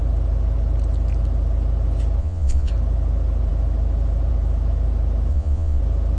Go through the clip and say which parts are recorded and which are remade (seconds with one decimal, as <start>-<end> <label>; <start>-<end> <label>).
0.0-2.2 recorded; 2.2-2.7 remade; 2.7-5.3 recorded; 5.3-5.8 remade; 5.8-6.2 recorded